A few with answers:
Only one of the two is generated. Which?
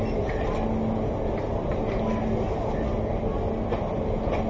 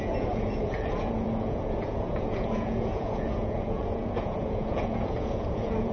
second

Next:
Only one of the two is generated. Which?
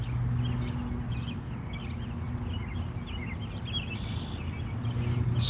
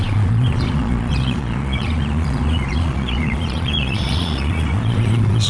second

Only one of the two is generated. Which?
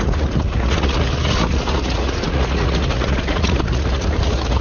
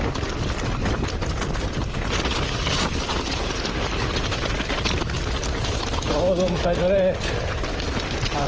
first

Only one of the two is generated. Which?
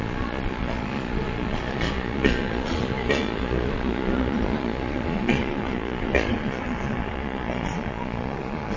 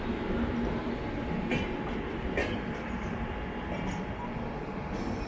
first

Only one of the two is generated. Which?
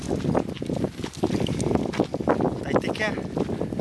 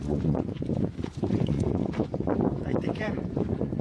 second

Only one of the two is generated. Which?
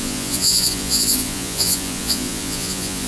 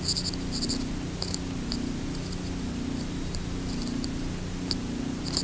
first